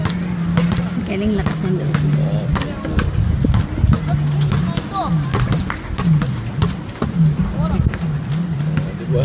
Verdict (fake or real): real